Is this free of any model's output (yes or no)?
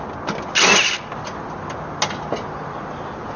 yes